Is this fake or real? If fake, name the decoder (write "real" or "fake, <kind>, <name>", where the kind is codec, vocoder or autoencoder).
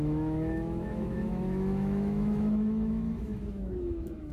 fake, autoencoder, DAC-VAE